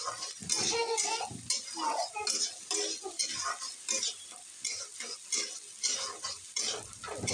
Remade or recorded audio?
recorded